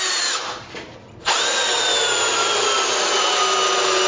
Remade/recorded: recorded